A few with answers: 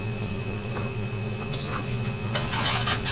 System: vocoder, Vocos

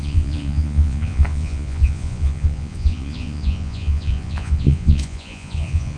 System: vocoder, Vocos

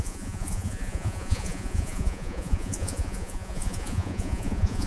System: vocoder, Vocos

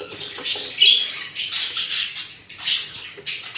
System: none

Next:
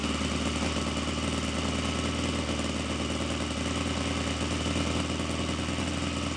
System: none